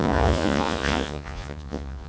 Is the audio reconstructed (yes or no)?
yes